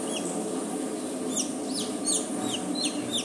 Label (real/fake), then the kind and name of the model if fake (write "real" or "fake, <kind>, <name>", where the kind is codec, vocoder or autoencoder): real